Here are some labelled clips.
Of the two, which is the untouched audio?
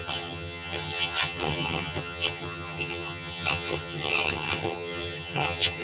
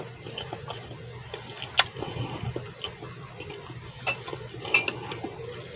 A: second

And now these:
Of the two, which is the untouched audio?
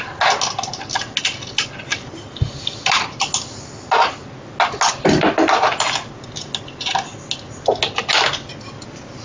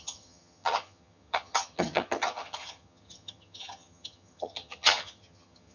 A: first